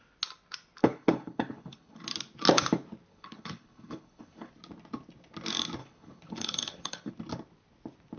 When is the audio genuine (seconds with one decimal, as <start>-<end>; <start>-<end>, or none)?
0.0-0.8; 2.0-3.1; 4.5-5.8; 7.1-8.2